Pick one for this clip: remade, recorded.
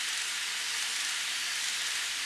recorded